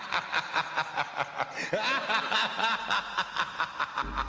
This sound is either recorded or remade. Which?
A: recorded